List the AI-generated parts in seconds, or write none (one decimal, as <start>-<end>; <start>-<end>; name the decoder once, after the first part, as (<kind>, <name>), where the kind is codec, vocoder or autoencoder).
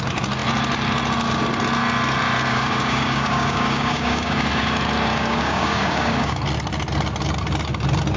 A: 2.5-4.5 (codec, DAC); 5.1-6.4